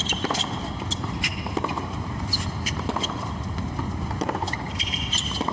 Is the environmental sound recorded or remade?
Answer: recorded